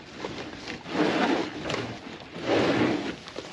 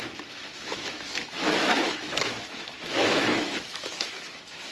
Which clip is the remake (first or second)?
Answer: second